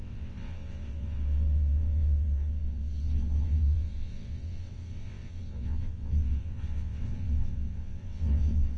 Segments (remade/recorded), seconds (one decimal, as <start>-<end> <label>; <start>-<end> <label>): 0.0-8.8 remade